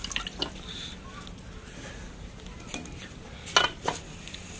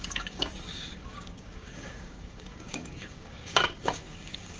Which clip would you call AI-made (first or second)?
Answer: second